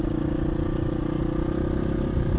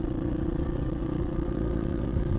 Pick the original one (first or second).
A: first